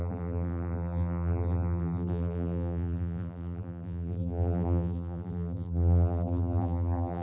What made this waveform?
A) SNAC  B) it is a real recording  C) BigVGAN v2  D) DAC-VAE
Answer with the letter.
C